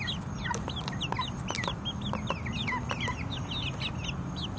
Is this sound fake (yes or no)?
no